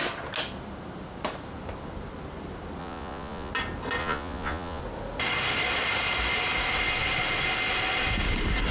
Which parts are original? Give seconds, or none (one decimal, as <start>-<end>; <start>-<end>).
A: 0.0-2.8; 3.5-4.0; 4.8-8.7